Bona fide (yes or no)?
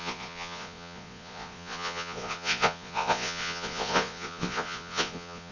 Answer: no